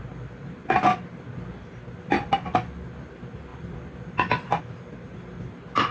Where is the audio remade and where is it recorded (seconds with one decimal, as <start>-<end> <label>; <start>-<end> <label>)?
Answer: 0.0-5.9 recorded